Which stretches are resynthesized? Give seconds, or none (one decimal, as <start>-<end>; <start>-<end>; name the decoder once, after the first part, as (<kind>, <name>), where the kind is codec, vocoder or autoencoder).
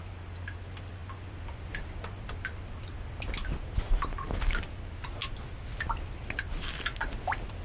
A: none